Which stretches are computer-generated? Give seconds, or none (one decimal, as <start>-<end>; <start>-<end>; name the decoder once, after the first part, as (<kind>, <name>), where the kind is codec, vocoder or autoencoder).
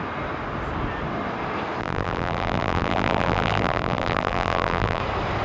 1.8-5.0 (vocoder, BigVGAN v2)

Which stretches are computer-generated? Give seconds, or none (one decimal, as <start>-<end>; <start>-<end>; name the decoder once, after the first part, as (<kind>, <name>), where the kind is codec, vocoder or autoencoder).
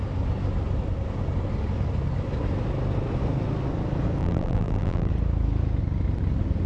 4.2-5.1 (vocoder, BigVGAN v2)